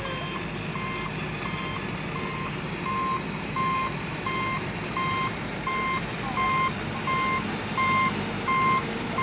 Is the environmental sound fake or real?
real